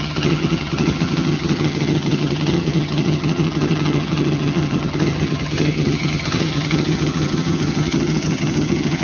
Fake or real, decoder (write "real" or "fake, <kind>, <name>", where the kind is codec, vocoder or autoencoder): fake, vocoder, HiFi-GAN